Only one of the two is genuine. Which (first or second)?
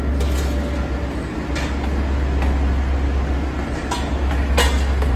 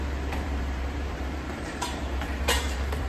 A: first